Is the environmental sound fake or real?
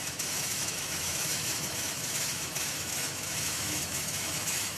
fake